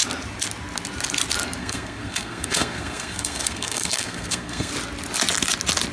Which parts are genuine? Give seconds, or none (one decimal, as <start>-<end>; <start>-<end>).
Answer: 0.0-1.6; 4.7-5.9